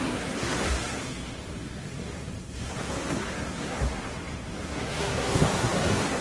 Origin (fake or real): fake